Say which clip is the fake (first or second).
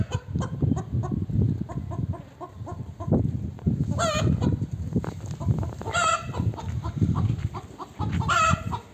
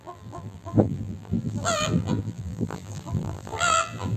second